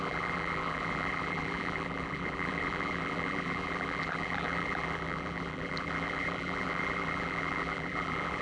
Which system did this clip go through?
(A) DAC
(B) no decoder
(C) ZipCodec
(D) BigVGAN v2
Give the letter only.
D